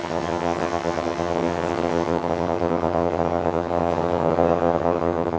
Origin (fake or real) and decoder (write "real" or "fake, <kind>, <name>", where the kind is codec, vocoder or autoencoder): fake, vocoder, HiFi-GAN